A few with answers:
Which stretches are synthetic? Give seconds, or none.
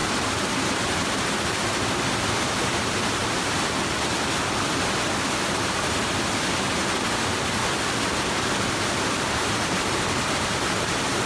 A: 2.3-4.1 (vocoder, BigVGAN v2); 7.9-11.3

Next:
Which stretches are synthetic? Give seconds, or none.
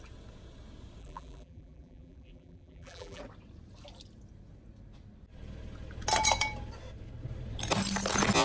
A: 1.0-3.2 (vocoder, BigVGAN v2)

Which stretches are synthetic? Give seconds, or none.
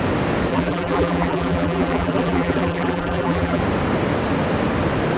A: 0.5-3.6 (vocoder, BigVGAN v2)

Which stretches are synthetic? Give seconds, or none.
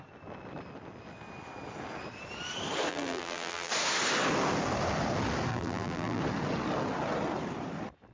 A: 2.9-3.7 (vocoder, BigVGAN v2); 5.5-6.2